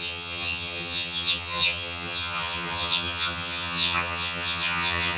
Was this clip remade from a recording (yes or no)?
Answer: yes